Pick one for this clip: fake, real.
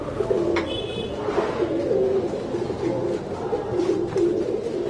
real